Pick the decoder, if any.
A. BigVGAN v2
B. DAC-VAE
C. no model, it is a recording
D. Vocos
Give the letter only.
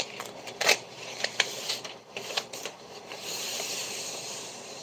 A